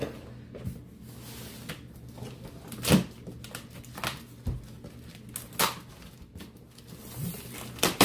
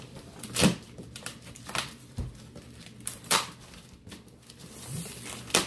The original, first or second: first